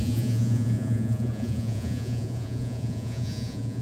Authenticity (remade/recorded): remade